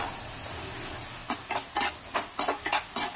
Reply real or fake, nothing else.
real